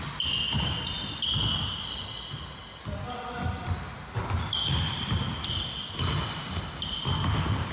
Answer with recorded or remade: recorded